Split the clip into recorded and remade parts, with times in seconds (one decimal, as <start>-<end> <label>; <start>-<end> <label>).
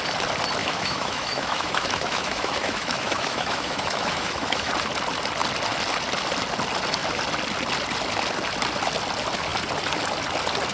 0.0-0.6 recorded; 0.6-4.7 remade; 4.7-10.7 recorded